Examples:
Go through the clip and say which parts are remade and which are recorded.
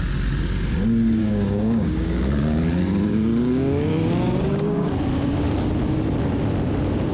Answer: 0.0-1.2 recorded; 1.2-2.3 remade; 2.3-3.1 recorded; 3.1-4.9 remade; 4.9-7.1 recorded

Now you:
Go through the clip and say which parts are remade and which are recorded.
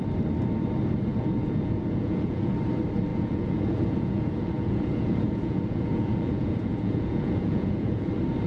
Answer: 0.0-1.1 recorded; 1.1-2.5 remade; 2.5-3.1 recorded; 3.1-8.1 remade; 8.1-8.5 recorded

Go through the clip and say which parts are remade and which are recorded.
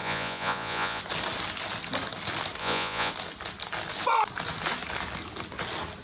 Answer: 0.0-1.0 remade; 1.0-2.6 recorded; 2.6-3.1 remade; 3.1-6.0 recorded